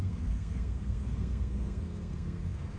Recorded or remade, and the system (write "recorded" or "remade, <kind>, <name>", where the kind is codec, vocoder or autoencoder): remade, codec, SNAC